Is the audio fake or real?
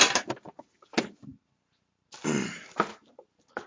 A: real